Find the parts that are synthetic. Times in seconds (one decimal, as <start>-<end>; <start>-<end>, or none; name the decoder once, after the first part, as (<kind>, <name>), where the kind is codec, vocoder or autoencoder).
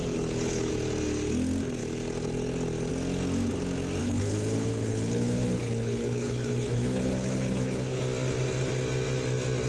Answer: 0.0-0.7 (codec, HILCodec); 4.0-8.0